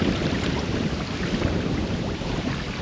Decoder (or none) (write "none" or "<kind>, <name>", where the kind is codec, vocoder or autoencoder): none